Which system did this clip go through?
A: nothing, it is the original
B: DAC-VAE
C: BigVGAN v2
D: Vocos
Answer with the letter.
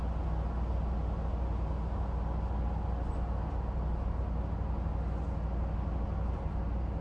A